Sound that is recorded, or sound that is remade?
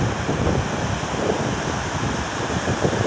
recorded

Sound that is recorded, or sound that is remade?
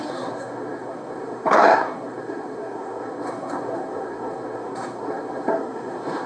remade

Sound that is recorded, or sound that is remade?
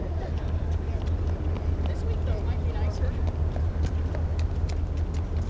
recorded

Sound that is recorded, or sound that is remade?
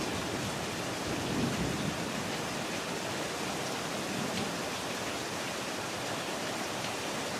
remade